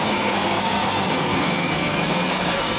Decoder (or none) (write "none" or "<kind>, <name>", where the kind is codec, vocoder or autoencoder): codec, SNAC